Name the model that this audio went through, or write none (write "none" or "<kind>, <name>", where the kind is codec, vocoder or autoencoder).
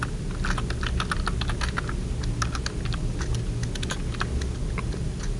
none